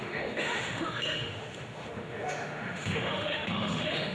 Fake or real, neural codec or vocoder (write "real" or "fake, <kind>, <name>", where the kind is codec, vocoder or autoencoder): fake, autoencoder, DAC-VAE